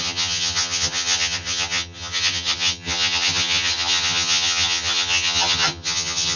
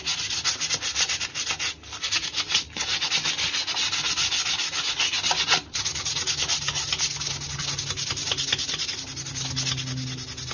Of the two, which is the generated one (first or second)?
first